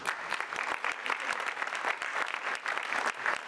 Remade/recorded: recorded